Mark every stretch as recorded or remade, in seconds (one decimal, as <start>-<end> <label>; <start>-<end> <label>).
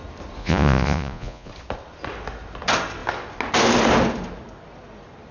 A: 0.0-0.4 recorded; 0.4-1.5 remade; 1.5-5.3 recorded